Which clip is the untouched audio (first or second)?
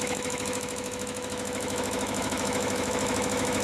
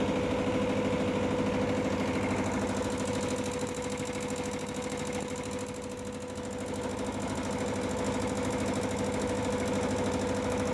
second